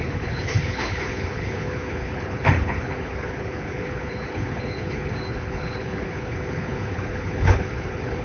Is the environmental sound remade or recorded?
remade